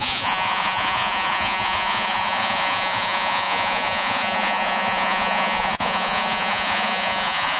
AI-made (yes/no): yes